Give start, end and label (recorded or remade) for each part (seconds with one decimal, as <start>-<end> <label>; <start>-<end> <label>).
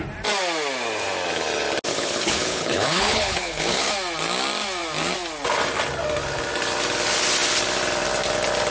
0.0-1.9 recorded; 1.9-3.9 remade; 3.9-8.7 recorded